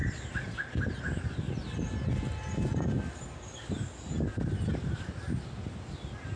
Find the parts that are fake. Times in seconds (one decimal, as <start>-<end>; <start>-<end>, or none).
none